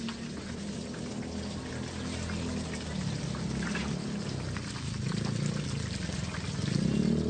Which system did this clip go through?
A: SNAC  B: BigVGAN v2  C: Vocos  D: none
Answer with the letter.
D